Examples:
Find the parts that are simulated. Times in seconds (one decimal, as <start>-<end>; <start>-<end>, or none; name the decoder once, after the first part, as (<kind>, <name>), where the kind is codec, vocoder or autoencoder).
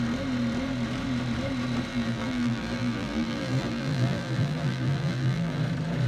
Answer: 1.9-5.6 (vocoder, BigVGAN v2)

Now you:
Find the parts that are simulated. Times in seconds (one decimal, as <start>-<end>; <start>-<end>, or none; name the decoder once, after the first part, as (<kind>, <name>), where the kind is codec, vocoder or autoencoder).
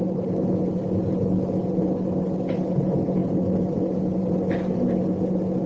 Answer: none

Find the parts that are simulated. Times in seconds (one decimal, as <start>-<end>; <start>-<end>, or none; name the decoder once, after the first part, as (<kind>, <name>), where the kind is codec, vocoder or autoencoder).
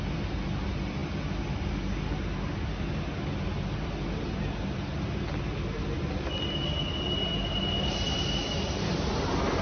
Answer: none